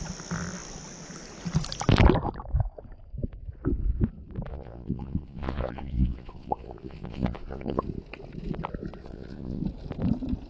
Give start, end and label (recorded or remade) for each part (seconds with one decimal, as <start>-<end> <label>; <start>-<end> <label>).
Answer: 0.0-4.5 recorded; 4.5-7.8 remade; 7.8-9.0 recorded; 9.0-9.6 remade; 9.6-10.5 recorded